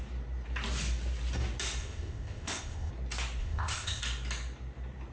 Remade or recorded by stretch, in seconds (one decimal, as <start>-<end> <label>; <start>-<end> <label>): 0.0-1.8 recorded; 1.8-2.9 remade; 2.9-3.4 recorded; 3.4-4.0 remade; 4.0-5.1 recorded

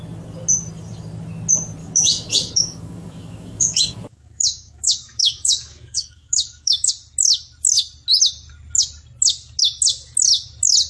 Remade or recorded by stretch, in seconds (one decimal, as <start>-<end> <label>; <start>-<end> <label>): 0.0-1.8 recorded; 1.8-6.9 remade; 6.9-10.9 recorded

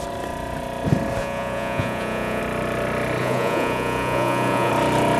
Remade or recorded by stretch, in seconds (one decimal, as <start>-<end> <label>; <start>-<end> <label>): 0.0-1.2 recorded; 1.2-2.4 remade; 2.4-3.2 recorded; 3.2-4.7 remade; 4.7-5.2 recorded

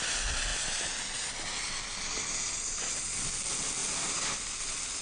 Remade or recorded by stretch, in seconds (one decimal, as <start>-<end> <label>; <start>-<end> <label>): 0.0-5.0 recorded

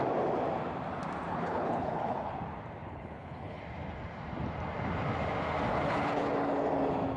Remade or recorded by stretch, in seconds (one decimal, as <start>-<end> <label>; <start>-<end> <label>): 0.0-1.3 recorded; 1.3-2.3 remade; 2.3-2.8 recorded; 2.8-3.6 remade; 3.6-5.7 recorded; 5.7-6.3 remade; 6.3-7.2 recorded

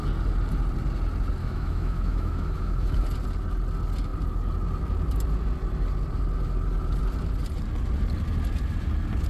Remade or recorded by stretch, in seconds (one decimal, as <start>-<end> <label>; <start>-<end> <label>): 0.0-1.4 recorded; 1.4-3.0 remade; 3.0-9.3 recorded

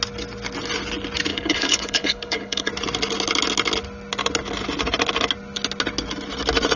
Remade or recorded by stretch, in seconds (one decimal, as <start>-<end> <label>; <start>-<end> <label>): 0.0-1.3 recorded; 1.3-2.7 remade; 2.7-6.8 recorded